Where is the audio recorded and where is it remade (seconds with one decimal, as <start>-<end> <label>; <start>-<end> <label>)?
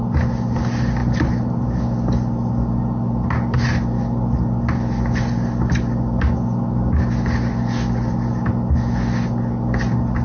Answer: 0.0-1.0 recorded; 1.0-1.8 remade; 1.8-10.2 recorded